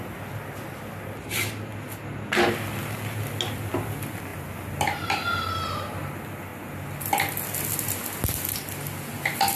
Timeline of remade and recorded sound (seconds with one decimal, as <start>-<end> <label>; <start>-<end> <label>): 0.0-9.6 recorded